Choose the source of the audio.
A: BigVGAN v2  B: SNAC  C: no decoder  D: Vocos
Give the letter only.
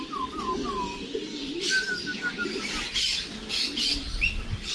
C